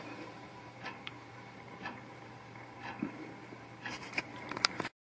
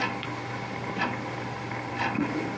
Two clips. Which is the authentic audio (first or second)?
second